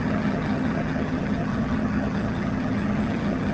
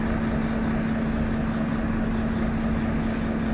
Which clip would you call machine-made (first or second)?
first